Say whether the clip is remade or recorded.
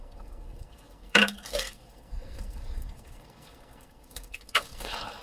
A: remade